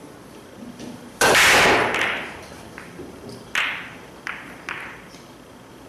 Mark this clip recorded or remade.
recorded